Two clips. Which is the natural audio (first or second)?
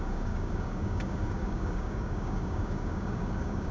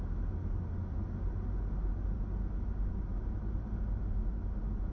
second